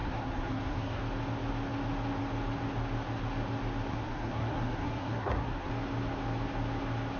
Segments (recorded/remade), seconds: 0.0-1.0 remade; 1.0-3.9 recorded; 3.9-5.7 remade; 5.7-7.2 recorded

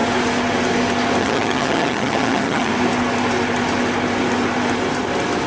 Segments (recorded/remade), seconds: 0.0-1.2 recorded; 1.2-2.7 remade; 2.7-5.5 recorded

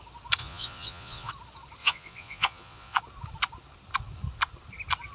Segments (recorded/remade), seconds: 0.0-0.4 recorded; 0.4-1.3 remade; 1.3-1.8 recorded; 1.8-3.0 remade; 3.0-5.1 recorded

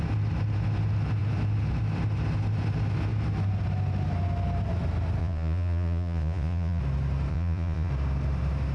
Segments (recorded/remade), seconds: 0.0-5.2 recorded; 5.2-6.8 remade; 6.8-7.3 recorded; 7.3-7.9 remade; 7.9-8.7 recorded